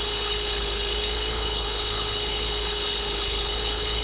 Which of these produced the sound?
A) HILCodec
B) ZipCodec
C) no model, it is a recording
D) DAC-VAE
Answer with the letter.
A